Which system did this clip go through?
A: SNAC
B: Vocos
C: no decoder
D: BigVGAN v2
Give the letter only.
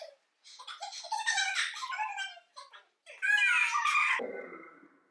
C